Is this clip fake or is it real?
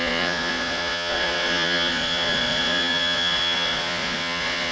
fake